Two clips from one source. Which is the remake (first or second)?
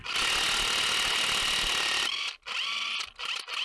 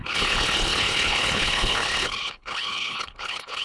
second